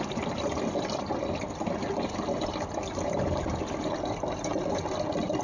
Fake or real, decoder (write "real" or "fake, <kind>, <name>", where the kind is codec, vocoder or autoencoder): fake, vocoder, BigVGAN v2